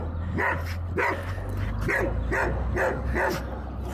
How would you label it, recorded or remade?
recorded